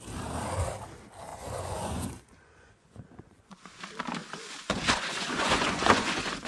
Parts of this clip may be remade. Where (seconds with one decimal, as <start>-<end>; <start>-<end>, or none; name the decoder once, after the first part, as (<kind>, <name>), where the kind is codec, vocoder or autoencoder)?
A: 1.3-3.8 (vocoder, Vocos); 4.2-6.5